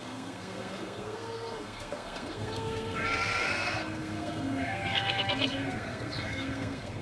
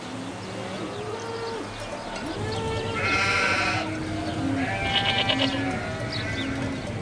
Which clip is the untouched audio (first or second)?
second